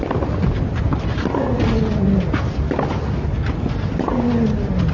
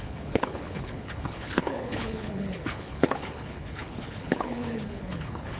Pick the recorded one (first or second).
first